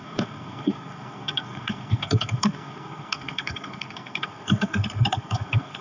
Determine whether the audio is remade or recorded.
remade